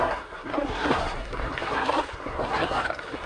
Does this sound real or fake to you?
fake